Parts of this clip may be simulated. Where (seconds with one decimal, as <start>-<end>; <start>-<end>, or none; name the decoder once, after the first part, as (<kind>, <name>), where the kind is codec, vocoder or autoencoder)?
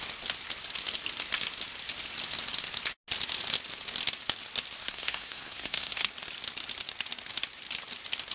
4.8-6.1 (codec, SNAC)